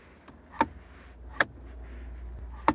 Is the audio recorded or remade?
recorded